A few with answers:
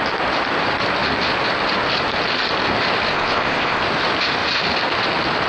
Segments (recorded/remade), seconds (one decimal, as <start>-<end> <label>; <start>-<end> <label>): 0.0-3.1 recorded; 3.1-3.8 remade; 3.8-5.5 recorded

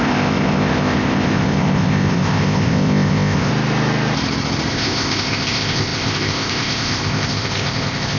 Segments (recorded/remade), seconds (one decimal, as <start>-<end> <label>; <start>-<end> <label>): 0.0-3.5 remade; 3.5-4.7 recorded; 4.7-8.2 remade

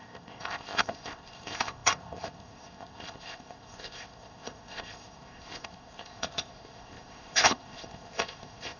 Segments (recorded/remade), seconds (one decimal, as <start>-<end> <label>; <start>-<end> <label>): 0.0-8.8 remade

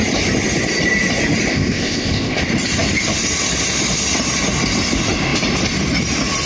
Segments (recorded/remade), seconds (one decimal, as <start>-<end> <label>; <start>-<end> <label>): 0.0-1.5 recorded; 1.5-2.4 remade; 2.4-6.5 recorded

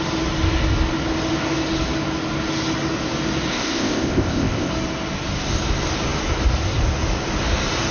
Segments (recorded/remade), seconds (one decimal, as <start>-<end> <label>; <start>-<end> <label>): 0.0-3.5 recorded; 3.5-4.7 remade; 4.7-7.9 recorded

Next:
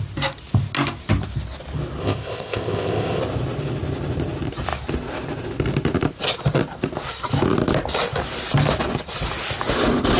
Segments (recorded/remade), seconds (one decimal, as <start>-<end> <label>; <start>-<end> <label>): 0.0-2.0 recorded; 2.0-3.2 remade; 3.2-10.2 recorded

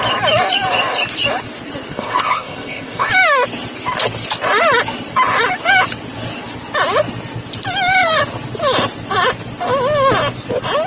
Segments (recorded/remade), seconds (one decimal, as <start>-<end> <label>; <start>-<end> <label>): 0.0-1.9 recorded; 1.9-3.1 remade; 3.1-10.9 recorded

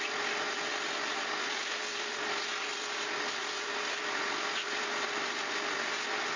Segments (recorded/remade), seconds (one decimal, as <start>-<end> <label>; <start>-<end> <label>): 0.0-6.4 recorded